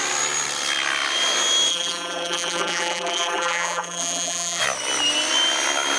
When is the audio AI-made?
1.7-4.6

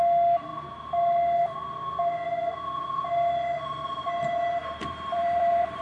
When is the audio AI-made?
4.8-5.8

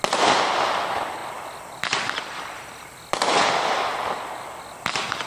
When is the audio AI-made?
1.2-4.4